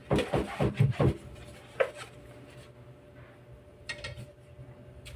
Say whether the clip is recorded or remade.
recorded